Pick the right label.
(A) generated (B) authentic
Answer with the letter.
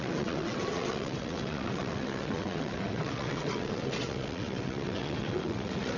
A